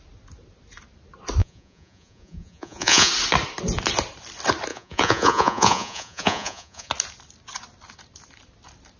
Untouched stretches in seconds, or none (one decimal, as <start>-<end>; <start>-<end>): 0.0-1.4; 3.1-4.7; 6.9-9.0